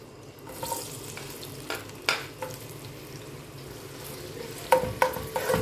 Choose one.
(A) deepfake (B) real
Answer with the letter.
B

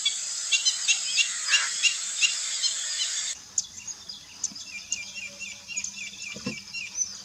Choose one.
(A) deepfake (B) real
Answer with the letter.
B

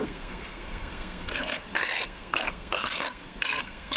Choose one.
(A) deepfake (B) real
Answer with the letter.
A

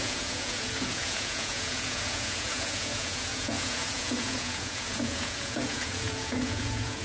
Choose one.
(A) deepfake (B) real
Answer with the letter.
A